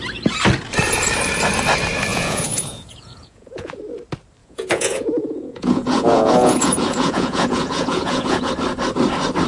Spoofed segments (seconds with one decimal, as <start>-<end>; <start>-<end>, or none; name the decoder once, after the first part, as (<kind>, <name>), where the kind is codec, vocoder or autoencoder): 2.1-3.8 (vocoder, Vocos); 4.4-8.5